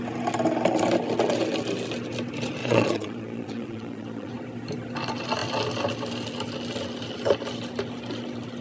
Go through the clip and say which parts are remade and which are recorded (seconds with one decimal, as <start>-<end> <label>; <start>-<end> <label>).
0.0-2.6 recorded; 2.6-4.3 remade; 4.3-8.6 recorded